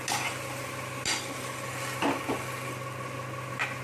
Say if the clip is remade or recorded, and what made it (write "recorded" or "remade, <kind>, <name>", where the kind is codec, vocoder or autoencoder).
recorded